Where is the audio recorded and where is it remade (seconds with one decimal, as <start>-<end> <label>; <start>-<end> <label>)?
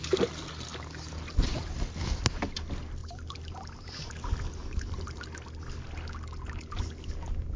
0.0-3.0 recorded; 3.0-4.1 remade; 4.1-4.6 recorded; 4.6-5.2 remade; 5.2-7.6 recorded